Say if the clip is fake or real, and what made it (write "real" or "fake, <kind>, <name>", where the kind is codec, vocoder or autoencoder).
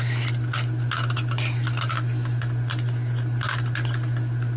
real